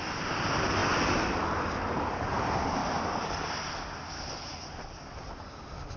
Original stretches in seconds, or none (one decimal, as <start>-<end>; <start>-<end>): 0.0-6.0